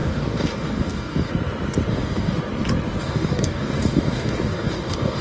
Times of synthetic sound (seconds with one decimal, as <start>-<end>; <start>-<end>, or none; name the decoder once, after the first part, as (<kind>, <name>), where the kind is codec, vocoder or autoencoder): 0.0-1.3 (codec, DAC); 1.9-2.4; 3.0-5.2